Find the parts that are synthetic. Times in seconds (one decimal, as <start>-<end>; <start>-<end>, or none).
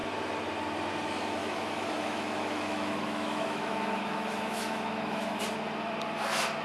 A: 1.4-5.4